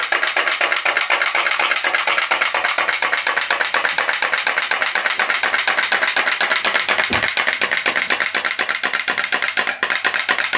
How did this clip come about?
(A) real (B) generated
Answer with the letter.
A